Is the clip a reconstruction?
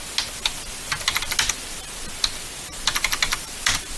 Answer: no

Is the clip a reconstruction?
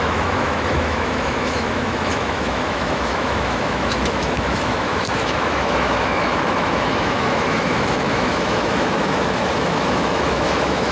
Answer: yes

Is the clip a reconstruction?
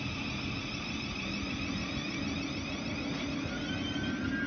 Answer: no